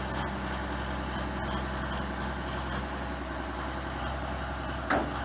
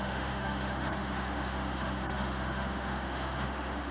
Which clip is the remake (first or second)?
second